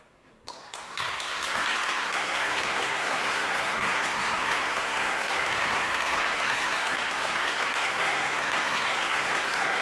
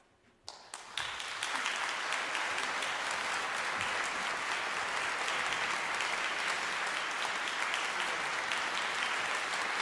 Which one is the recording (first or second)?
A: second